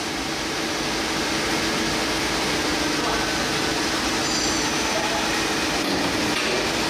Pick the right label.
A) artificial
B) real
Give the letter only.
B